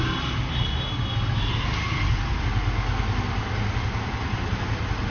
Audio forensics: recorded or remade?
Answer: recorded